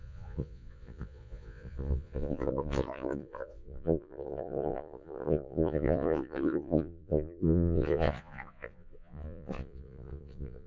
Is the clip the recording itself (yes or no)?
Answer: no